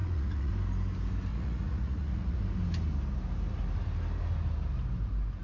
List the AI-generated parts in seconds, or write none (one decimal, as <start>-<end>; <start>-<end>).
0.0-0.5; 1.3-2.4